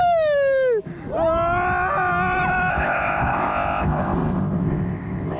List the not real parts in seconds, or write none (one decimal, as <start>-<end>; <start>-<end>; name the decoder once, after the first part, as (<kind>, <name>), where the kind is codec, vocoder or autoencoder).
2.7-5.4 (codec, ZipCodec)